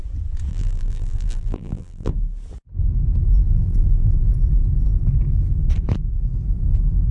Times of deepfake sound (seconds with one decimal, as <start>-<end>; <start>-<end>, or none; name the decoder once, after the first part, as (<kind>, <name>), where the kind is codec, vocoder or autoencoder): 0.5-2.1 (vocoder, BigVGAN v2); 3.5-4.1